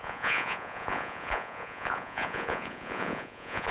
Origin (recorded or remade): remade